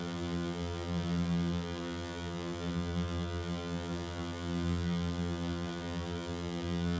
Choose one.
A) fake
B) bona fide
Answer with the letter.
A